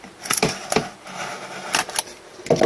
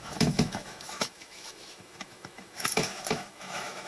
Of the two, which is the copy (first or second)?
second